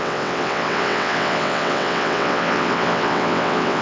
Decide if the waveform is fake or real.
fake